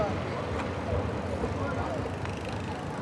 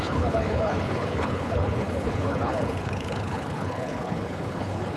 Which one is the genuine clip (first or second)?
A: first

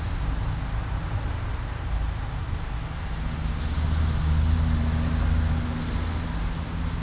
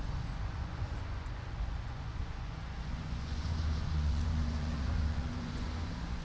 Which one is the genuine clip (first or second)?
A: first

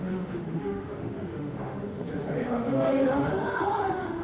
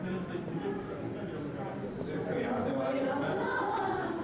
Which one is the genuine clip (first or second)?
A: second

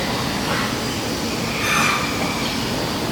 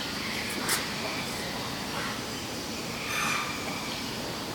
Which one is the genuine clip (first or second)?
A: first